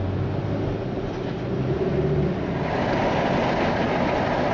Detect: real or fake real